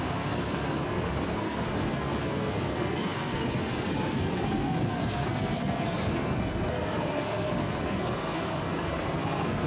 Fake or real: fake